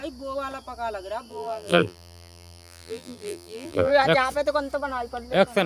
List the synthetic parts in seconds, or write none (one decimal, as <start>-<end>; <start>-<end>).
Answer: 1.3-3.9